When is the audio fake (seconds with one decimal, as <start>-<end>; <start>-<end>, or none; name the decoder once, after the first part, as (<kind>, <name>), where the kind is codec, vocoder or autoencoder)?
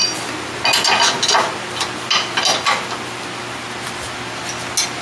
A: none